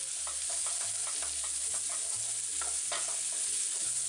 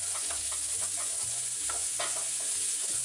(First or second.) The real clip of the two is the first